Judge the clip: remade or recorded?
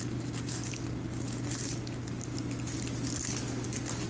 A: recorded